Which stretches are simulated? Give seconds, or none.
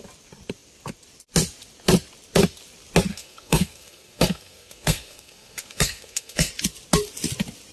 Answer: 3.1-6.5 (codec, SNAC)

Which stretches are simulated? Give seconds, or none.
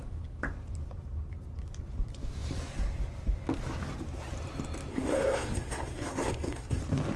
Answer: 4.9-6.8 (codec, SNAC)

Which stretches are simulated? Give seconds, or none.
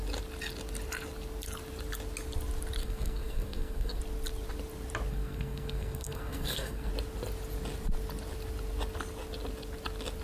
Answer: 2.8-4.0 (codec, SNAC); 5.1-6.9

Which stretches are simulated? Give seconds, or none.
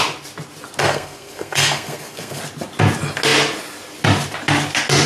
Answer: 0.8-2.4 (codec, SNAC)